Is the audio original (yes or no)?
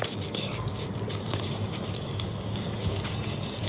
no